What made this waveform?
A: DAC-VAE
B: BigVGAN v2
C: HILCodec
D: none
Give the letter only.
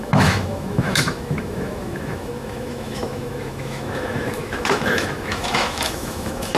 A